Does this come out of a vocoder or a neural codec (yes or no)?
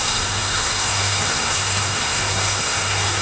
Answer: yes